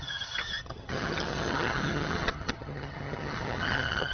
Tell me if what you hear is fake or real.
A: fake